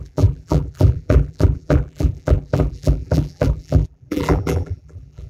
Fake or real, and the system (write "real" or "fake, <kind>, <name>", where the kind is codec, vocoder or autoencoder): fake, vocoder, BigVGAN v2